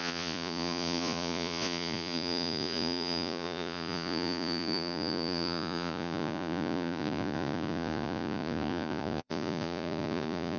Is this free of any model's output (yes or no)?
no